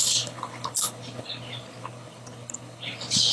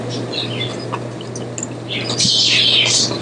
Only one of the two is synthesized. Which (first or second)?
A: first